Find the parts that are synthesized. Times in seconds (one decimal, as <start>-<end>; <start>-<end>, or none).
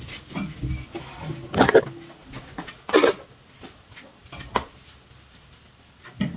none